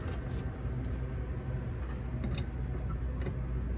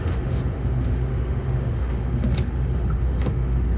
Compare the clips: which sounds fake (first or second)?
second